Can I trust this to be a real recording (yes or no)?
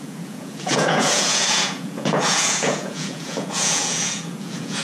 no